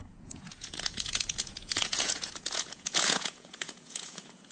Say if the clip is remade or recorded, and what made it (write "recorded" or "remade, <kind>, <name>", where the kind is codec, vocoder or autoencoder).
remade, vocoder, Vocos